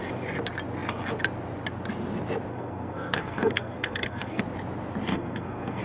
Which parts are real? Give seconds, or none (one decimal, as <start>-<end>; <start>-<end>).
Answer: 0.0-2.5; 4.4-5.1